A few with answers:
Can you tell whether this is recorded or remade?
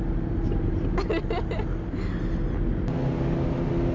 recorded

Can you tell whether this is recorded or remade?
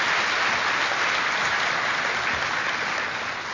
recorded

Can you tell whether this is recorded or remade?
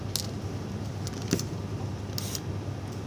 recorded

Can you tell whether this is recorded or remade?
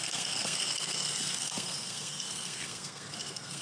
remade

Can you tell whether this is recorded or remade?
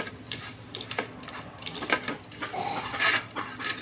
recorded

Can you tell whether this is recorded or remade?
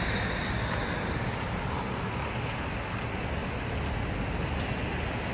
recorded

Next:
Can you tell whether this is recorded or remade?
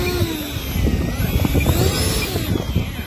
recorded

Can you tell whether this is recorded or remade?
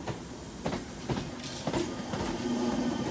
recorded